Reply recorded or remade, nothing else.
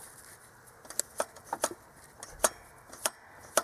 recorded